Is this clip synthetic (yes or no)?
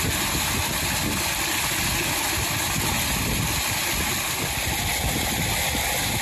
no